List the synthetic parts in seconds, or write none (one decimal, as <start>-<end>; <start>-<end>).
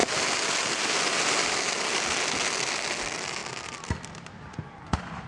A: none